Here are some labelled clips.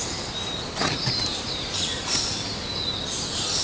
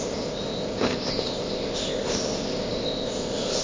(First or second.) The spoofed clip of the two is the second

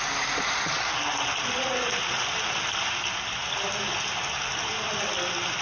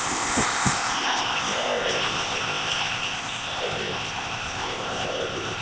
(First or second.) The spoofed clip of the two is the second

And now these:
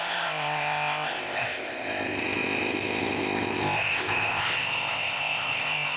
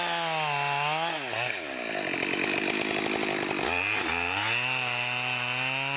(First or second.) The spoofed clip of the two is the first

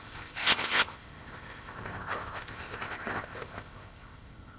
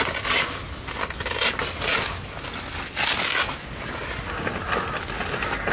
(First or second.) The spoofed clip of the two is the first